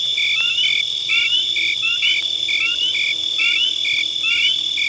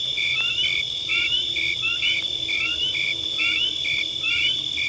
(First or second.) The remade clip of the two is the second